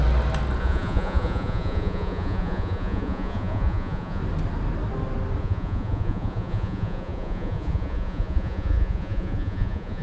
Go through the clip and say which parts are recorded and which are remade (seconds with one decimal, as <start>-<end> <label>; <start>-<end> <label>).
0.0-0.6 recorded; 0.6-4.2 remade; 4.2-5.4 recorded; 5.4-10.0 remade

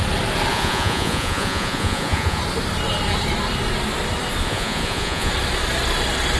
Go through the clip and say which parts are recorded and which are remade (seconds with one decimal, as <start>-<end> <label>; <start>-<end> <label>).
0.0-0.5 recorded; 0.5-2.4 remade; 2.4-4.4 recorded; 4.4-5.3 remade; 5.3-6.4 recorded